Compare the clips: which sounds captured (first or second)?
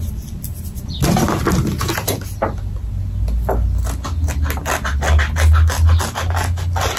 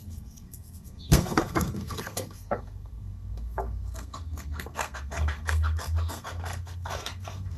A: first